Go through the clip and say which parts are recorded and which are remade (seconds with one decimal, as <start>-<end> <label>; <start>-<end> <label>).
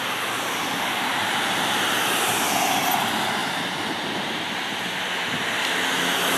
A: 0.0-6.4 recorded